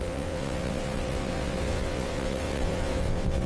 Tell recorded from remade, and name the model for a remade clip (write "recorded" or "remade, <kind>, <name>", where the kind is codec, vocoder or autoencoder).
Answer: remade, vocoder, WaveNeXt